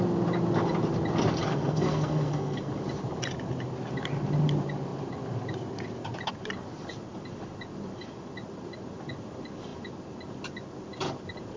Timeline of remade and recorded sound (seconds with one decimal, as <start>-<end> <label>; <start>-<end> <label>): 0.0-1.5 recorded; 1.5-2.7 remade; 2.7-11.6 recorded